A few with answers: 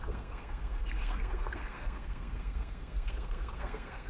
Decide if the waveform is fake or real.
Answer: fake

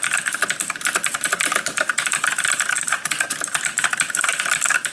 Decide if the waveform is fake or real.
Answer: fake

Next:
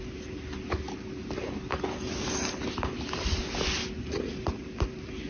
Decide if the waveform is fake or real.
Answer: real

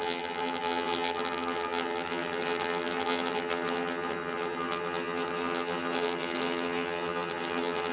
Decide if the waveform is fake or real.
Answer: fake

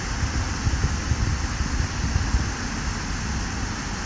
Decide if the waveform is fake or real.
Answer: real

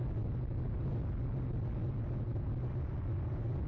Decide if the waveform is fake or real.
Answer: real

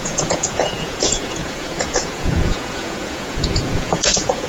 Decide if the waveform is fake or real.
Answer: fake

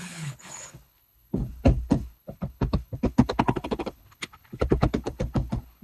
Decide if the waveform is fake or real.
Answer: fake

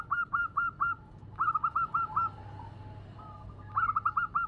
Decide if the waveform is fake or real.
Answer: real